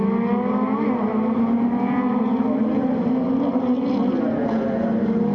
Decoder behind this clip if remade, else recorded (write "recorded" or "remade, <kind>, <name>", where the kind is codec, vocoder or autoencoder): recorded